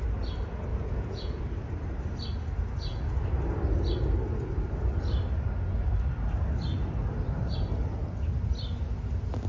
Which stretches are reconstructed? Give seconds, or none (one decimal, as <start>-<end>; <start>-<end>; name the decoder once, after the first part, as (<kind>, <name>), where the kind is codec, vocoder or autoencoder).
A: 0.7-1.4 (vocoder, Vocos)